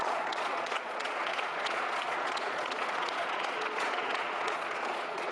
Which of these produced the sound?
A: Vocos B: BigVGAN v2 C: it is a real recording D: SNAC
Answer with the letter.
A